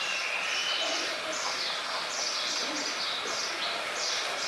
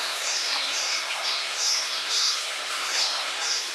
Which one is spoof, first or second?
second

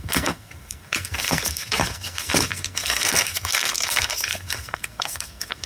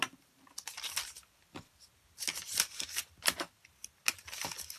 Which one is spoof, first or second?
first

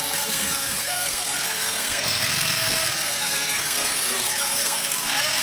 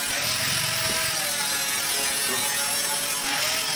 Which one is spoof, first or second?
first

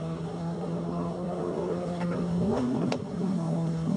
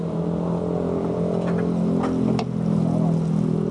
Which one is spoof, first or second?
first